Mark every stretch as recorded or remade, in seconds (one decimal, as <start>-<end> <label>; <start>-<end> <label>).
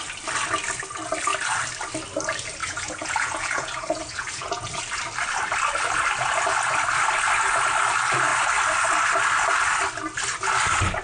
0.0-2.6 recorded; 2.6-4.8 remade; 4.8-11.0 recorded